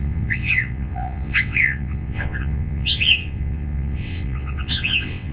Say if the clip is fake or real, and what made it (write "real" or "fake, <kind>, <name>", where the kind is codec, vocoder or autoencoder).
fake, vocoder, WaveNeXt